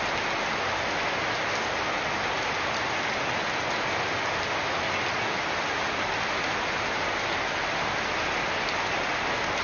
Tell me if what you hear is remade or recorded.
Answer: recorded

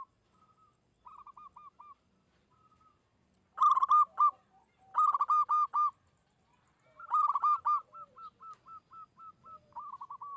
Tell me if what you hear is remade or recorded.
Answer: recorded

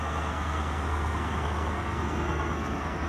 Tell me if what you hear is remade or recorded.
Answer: remade